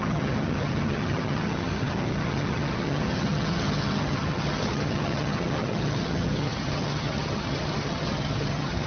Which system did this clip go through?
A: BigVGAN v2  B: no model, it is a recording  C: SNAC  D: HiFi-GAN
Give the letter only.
D